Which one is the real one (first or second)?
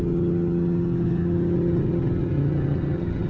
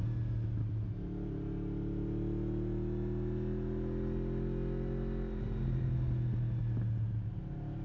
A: second